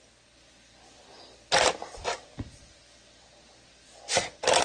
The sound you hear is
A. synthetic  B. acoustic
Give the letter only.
B